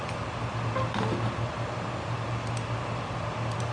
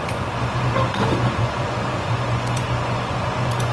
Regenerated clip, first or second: second